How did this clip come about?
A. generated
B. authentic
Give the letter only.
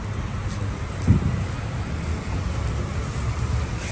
B